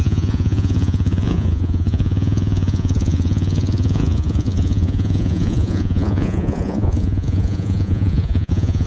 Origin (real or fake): fake